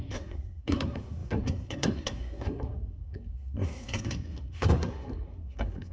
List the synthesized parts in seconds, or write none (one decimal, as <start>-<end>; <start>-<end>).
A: 0.0-5.9